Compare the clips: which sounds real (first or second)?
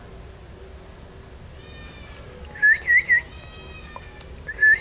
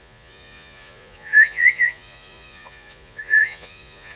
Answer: first